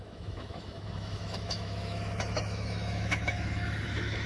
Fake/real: fake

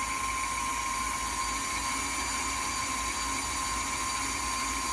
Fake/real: real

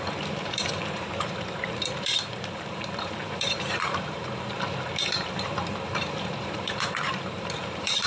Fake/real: fake